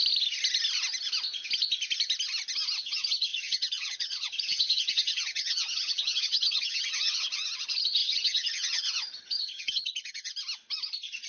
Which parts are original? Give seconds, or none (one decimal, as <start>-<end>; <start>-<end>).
0.0-2.8; 10.3-11.3